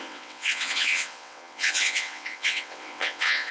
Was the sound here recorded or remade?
remade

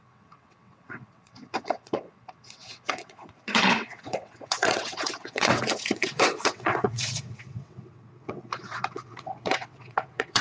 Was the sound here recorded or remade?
remade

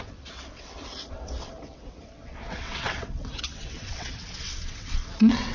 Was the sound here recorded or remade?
remade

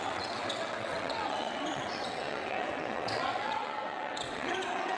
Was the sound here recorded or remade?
remade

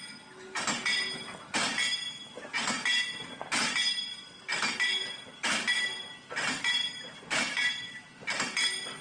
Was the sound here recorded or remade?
recorded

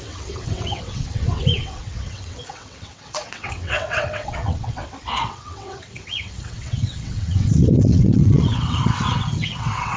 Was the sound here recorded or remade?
remade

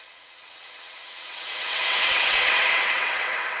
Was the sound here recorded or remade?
remade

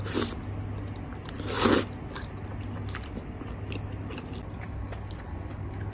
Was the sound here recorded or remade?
recorded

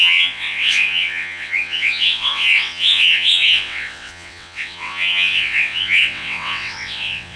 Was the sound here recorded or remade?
remade